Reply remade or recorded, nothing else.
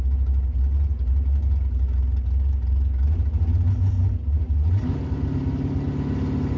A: recorded